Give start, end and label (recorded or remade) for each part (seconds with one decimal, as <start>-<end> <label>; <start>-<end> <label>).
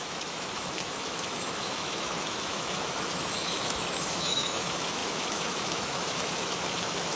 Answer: 0.0-7.2 remade